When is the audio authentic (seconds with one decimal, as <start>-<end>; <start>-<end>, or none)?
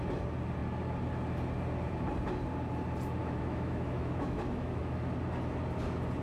0.0-3.2; 4.9-6.2